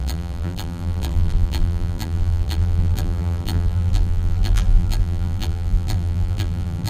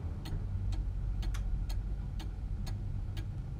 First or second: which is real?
second